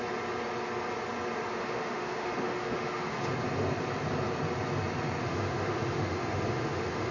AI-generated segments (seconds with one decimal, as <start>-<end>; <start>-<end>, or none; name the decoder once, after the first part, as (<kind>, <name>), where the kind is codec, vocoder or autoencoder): 1.5-3.3 (autoencoder, DAC-VAE); 5.2-7.1